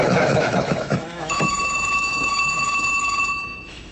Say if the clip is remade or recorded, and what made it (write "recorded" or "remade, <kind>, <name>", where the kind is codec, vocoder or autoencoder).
remade, autoencoder, DAC-VAE